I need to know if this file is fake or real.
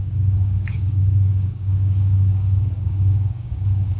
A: fake